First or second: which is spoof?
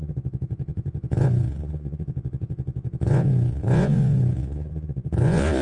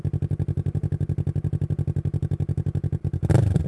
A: first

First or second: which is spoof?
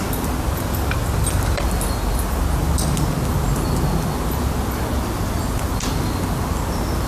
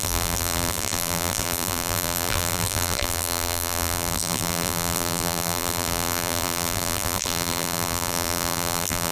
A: second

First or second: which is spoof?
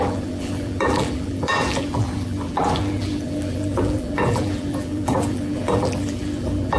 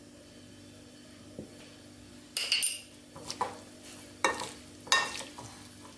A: first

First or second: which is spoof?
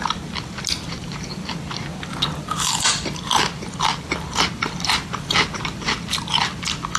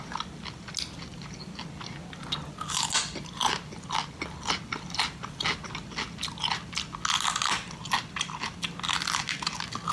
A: first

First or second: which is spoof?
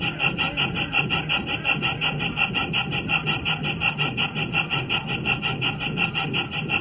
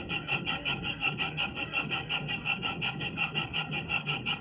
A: second